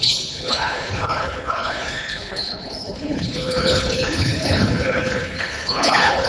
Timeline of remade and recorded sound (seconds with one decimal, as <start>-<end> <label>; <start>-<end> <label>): 0.0-6.3 remade